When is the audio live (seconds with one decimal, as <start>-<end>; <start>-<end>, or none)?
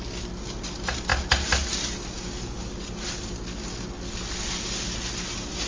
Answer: 0.0-5.7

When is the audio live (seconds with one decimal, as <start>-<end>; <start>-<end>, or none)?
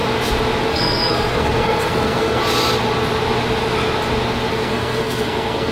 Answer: 0.0-0.7; 2.4-4.5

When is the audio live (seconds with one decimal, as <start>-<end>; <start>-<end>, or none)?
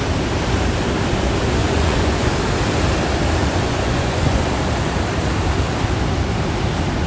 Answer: 0.0-1.6; 2.3-3.4; 4.5-7.1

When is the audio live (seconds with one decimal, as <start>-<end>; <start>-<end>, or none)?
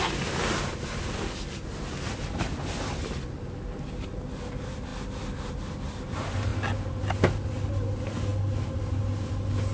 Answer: 0.0-9.7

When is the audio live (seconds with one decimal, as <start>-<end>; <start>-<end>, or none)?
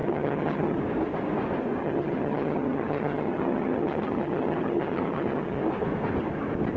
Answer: 0.8-1.8; 5.6-6.8